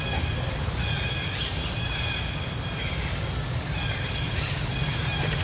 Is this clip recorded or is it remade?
recorded